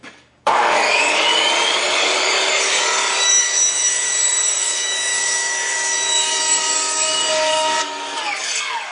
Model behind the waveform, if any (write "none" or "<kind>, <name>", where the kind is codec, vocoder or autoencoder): codec, DAC